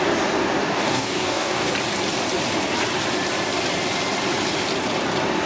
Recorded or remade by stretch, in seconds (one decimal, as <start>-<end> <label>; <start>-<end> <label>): 0.0-0.6 recorded; 0.6-1.7 remade; 1.7-5.5 recorded